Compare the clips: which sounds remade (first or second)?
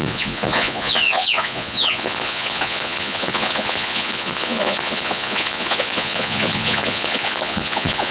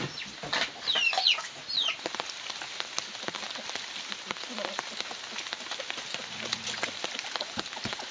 first